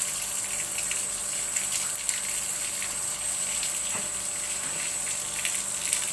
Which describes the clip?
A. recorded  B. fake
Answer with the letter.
A